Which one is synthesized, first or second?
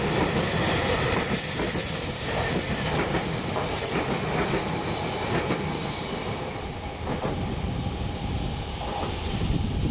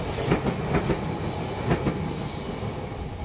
first